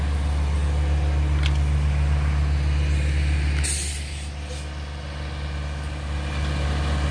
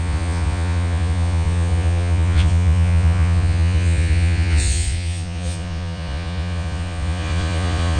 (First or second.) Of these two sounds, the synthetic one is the second